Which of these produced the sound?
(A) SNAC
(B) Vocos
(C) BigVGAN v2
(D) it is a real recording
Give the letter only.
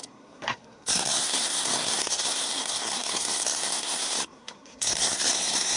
A